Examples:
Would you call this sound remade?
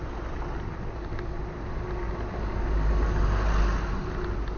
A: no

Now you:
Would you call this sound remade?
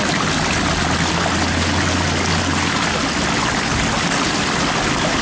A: no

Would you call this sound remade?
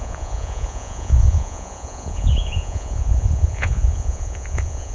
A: yes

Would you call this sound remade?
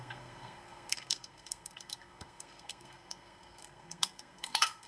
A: yes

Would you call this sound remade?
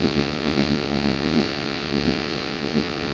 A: yes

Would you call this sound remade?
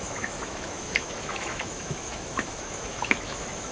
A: yes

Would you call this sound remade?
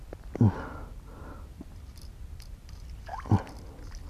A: no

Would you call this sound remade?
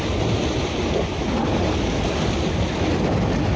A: no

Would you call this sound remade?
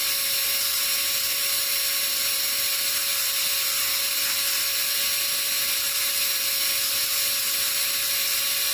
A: no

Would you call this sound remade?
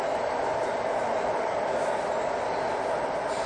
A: no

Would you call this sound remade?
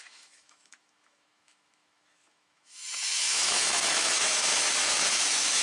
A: yes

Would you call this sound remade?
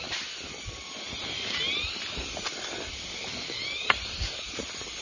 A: no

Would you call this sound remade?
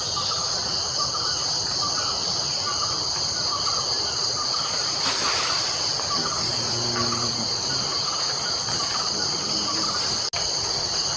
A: no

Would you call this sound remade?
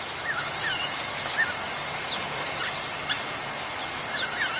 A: no